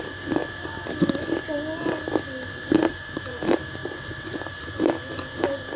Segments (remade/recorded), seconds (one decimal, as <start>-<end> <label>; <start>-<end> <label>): 0.0-0.4 remade; 0.4-2.9 recorded; 2.9-3.8 remade; 3.8-4.5 recorded; 4.5-5.8 remade